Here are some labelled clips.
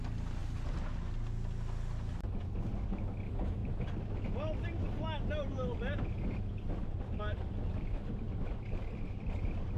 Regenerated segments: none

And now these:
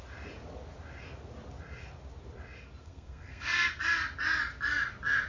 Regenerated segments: 2.8-3.7 (codec, SNAC)

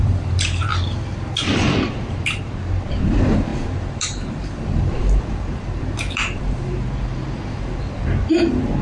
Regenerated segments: 0.0-0.7 (vocoder, BigVGAN v2); 1.5-8.8

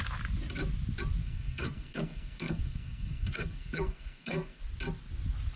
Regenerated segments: 1.2-4.6 (codec, SNAC)

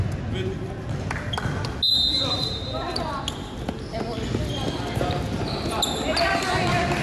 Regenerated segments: none

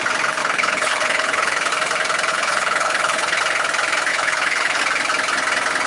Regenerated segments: 0.4-1.7 (codec, HILCodec); 2.3-3.4; 4.1-4.8

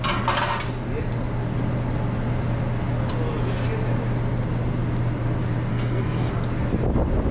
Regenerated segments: 5.7-6.3 (codec, SNAC)

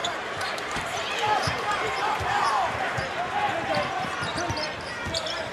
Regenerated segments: 0.0-4.3 (vocoder, BigVGAN v2)